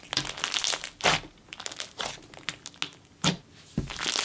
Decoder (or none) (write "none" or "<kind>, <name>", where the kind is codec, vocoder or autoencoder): none